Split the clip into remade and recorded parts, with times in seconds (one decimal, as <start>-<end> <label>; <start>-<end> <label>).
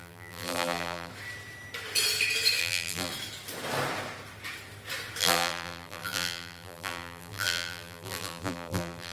0.0-1.1 remade; 1.1-2.6 recorded; 2.6-3.1 remade; 3.1-5.2 recorded; 5.2-9.1 remade